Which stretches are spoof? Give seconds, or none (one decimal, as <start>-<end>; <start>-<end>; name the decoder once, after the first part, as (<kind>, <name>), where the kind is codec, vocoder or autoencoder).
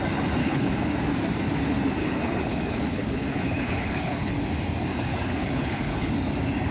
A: 0.4-0.9 (codec, HILCodec); 2.0-4.3; 4.9-6.1